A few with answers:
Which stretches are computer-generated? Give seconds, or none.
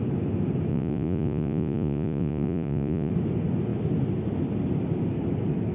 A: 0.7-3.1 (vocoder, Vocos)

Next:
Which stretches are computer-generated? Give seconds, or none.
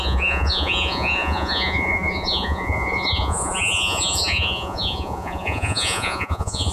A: 0.0-6.7 (vocoder, Vocos)